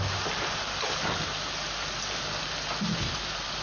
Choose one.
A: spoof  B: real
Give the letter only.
B